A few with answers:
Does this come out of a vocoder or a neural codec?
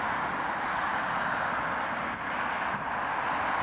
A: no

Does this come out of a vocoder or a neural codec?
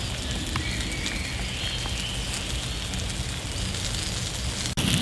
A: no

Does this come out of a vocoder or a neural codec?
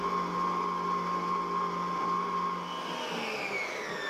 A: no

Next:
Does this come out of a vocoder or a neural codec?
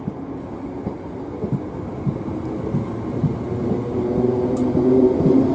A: no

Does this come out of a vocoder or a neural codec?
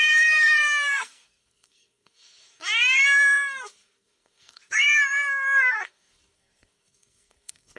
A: yes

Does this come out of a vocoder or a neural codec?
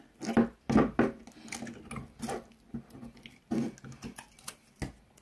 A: no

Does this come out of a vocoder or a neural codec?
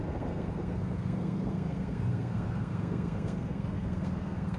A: yes